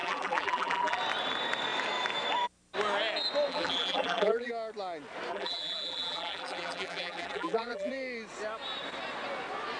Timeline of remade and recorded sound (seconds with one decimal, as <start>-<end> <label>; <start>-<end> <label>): 0.0-1.0 remade; 1.0-3.5 recorded; 3.5-4.5 remade; 4.5-5.3 recorded; 5.3-7.9 remade; 7.9-9.8 recorded

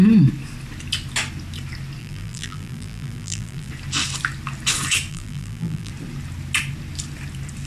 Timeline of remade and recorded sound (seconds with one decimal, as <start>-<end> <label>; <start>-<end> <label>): 0.0-2.0 recorded; 2.0-3.7 remade; 3.7-5.1 recorded; 5.1-5.9 remade; 5.9-7.7 recorded

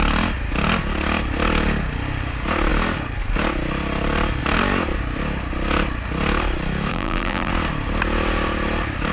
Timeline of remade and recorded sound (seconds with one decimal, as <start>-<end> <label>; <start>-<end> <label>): 0.0-6.9 recorded; 6.9-7.5 remade; 7.5-9.1 recorded

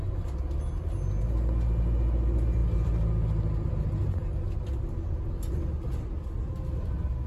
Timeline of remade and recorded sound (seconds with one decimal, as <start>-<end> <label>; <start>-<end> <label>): 0.0-7.3 recorded